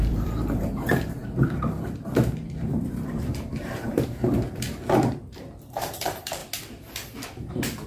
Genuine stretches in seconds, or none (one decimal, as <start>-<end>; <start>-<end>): 6.4-7.5